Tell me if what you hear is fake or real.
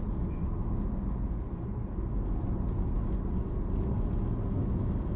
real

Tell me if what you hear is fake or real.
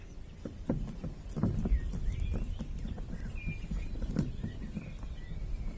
real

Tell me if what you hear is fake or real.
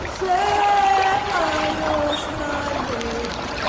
real